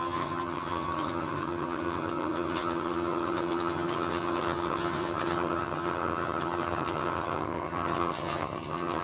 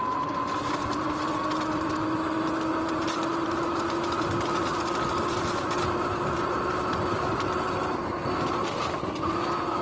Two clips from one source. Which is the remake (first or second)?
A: first